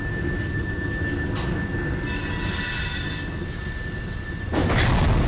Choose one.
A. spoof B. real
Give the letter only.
B